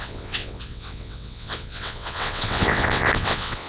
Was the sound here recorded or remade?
remade